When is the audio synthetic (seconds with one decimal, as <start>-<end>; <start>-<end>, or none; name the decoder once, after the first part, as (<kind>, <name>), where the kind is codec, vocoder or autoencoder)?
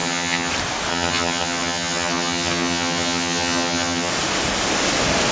0.0-0.5 (vocoder, HiFi-GAN); 0.9-4.1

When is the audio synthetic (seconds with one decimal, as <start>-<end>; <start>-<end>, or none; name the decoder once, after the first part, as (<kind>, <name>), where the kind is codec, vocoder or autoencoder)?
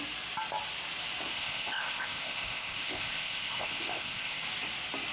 1.3-4.4 (codec, ZipCodec)